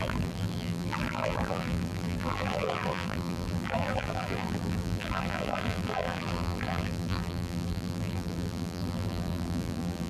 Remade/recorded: remade